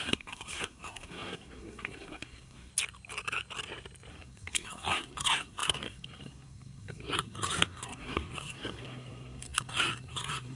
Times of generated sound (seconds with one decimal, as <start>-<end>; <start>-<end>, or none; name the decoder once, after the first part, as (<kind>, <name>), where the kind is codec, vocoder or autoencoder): 0.0-2.7 (codec, SNAC); 4.1-10.6